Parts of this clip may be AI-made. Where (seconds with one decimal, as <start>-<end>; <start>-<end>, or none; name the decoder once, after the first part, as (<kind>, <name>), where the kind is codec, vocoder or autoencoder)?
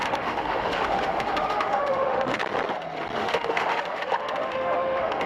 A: 0.0-2.4 (autoencoder, DAC-VAE); 3.2-5.3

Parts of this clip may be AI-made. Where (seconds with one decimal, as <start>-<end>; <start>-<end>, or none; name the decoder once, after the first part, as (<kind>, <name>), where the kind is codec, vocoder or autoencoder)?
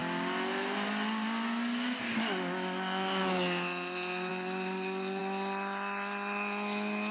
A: none